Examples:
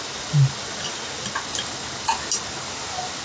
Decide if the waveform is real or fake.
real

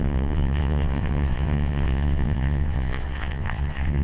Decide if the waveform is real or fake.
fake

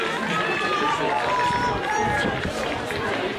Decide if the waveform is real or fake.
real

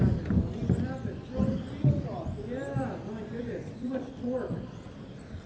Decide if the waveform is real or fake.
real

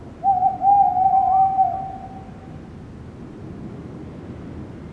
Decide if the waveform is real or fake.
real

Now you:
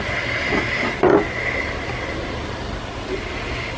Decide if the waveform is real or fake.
real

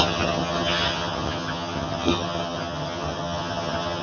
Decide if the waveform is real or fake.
fake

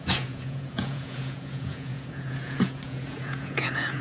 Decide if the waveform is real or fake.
fake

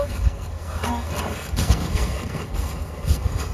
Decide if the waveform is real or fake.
fake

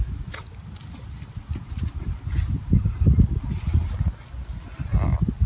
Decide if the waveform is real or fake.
real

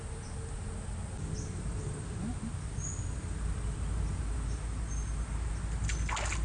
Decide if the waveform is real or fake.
real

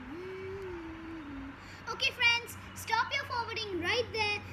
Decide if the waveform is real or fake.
real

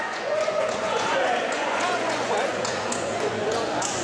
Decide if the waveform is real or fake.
fake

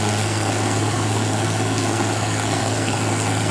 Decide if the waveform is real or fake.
fake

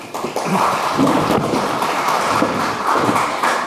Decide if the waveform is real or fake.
fake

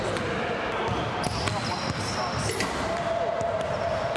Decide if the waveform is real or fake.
real